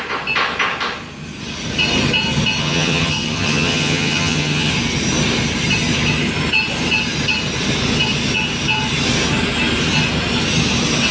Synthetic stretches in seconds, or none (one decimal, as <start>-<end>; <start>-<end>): 2.6-4.7